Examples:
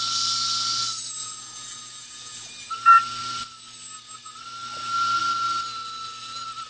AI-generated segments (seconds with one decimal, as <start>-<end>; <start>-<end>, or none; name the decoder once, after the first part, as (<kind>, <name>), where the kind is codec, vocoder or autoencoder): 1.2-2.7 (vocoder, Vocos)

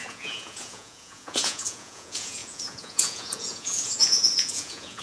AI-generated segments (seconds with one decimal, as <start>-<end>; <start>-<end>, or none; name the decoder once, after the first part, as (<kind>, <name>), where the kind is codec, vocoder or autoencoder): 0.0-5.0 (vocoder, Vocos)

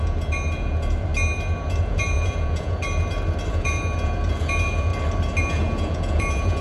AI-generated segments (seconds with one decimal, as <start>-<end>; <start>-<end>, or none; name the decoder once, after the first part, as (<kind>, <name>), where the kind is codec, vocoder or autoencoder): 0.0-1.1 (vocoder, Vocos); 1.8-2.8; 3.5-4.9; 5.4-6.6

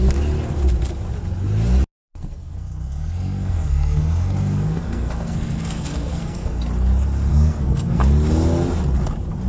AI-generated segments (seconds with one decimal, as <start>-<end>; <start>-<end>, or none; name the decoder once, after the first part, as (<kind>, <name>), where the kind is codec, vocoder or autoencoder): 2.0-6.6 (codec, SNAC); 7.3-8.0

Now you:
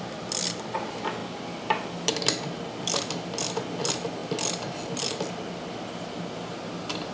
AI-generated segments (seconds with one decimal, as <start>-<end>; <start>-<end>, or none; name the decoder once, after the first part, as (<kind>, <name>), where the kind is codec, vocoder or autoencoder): none

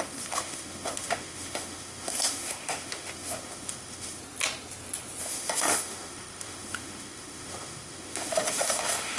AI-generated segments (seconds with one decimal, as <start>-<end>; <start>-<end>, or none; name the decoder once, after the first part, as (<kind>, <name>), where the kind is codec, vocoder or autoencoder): 0.0-4.2 (autoencoder, DAC-VAE); 5.2-9.2